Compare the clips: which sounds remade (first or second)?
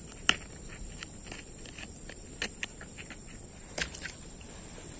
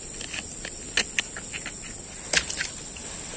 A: first